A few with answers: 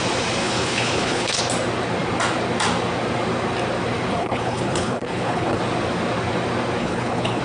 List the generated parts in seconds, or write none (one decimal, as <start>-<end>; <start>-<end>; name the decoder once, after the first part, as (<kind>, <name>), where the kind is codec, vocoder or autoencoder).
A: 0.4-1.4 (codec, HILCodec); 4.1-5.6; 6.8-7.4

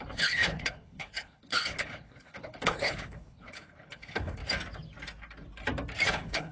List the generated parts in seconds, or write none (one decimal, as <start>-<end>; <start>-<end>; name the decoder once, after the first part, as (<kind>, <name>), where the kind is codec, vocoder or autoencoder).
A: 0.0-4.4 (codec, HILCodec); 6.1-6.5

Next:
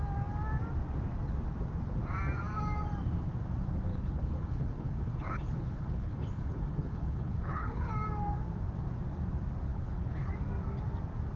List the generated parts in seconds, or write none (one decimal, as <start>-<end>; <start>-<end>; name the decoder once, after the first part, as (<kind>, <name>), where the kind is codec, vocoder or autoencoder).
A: 3.9-7.9 (codec, HILCodec); 9.7-10.3

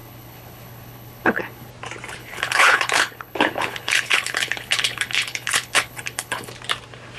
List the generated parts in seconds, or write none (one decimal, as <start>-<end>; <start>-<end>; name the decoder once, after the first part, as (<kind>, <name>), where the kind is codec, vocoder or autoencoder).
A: 0.0-1.7 (codec, HILCodec); 2.2-6.5